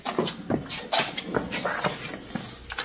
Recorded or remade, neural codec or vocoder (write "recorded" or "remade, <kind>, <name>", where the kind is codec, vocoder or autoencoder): recorded